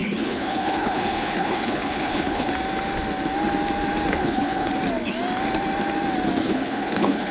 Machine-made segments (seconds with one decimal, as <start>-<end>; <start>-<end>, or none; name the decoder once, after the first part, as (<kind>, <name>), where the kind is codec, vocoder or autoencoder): 0.0-2.5 (codec, HILCodec); 4.1-4.7; 6.4-7.3